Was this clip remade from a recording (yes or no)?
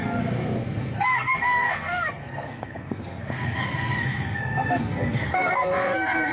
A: yes